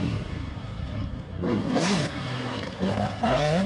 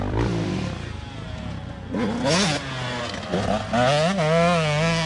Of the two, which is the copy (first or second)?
first